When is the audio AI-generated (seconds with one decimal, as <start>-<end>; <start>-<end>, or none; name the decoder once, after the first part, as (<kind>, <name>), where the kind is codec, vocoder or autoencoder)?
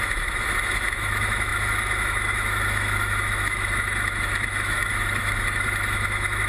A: 0.0-6.5 (autoencoder, DAC-VAE)